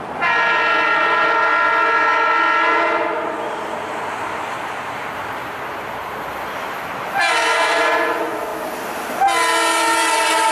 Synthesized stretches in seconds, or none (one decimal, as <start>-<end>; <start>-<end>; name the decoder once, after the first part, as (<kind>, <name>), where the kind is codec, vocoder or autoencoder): none